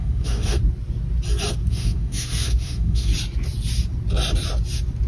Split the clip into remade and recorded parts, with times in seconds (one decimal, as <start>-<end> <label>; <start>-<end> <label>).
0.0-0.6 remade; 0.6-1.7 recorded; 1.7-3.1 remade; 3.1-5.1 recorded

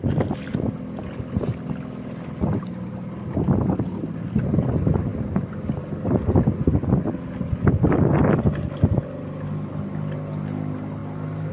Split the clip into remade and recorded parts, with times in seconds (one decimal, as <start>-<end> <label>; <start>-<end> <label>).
0.0-11.5 recorded

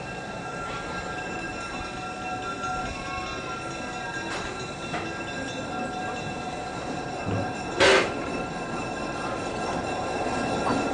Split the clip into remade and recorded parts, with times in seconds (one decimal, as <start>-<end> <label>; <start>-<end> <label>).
0.0-10.9 recorded

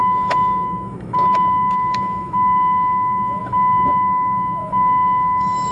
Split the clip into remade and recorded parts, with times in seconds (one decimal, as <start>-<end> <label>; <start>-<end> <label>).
0.0-5.7 remade

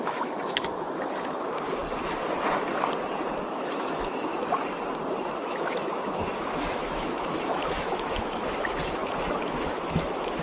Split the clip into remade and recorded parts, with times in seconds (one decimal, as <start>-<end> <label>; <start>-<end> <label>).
0.0-1.8 remade; 1.8-3.5 recorded; 3.5-4.3 remade; 4.3-5.4 recorded; 5.4-10.4 remade